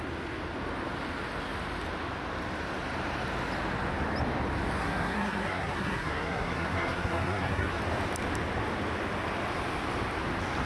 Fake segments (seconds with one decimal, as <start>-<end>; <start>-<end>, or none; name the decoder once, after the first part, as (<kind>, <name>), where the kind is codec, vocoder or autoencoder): 4.8-7.8 (codec, SNAC)